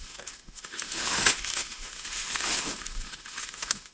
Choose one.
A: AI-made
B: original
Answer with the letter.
A